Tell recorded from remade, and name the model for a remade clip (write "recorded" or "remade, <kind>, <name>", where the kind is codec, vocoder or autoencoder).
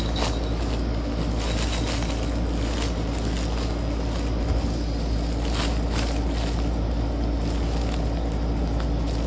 recorded